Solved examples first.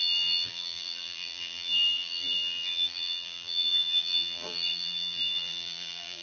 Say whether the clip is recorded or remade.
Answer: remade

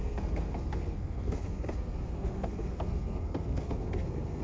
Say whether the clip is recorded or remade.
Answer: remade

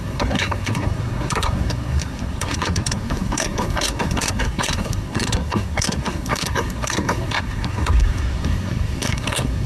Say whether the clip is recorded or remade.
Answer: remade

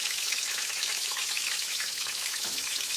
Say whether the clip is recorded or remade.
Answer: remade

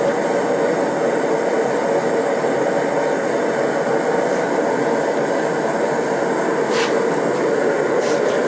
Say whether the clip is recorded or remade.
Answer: recorded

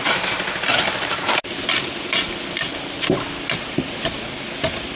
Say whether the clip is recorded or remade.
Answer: recorded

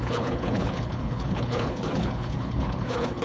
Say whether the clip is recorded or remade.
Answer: remade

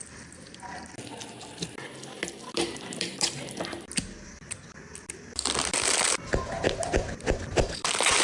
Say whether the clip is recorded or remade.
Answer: recorded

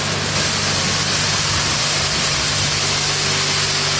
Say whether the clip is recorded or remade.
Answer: recorded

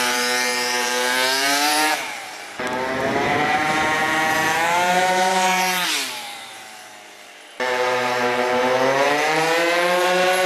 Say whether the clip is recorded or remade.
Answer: remade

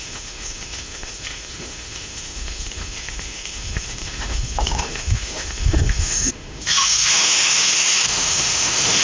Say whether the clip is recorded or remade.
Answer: remade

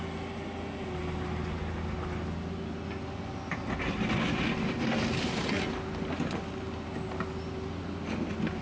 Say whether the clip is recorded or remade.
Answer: recorded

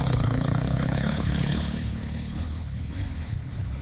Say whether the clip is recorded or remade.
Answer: remade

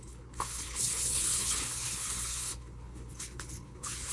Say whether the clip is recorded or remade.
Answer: remade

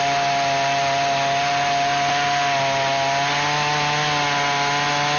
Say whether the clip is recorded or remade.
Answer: recorded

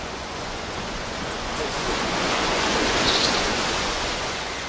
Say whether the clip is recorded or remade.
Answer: remade